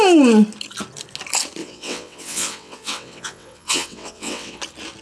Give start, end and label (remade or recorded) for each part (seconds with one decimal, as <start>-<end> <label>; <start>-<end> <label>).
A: 0.0-1.6 recorded; 1.6-4.6 remade; 4.6-5.0 recorded